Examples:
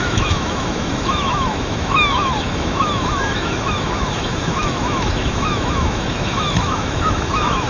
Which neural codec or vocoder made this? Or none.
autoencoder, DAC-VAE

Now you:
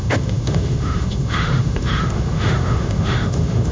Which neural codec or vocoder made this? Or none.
autoencoder, DAC-VAE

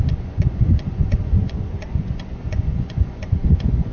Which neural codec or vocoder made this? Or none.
vocoder, Vocos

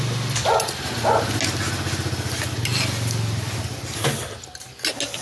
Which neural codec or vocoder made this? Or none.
none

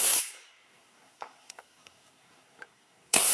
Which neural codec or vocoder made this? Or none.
codec, SNAC